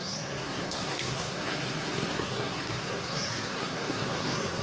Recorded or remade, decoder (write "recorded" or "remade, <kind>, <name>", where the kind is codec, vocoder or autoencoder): remade, codec, SNAC